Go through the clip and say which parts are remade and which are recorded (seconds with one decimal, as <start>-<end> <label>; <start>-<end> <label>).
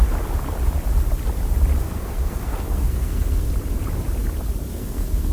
0.0-1.8 recorded; 1.8-3.5 remade; 3.5-4.7 recorded; 4.7-5.3 remade